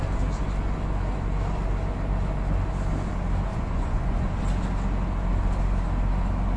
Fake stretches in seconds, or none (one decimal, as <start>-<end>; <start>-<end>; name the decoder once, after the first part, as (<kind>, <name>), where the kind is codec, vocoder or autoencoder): 3.5-4.3 (vocoder, Vocos)